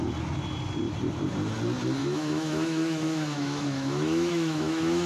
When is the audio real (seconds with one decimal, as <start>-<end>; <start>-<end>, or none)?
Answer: 0.0-2.0